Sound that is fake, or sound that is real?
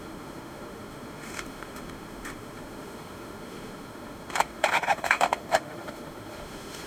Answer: fake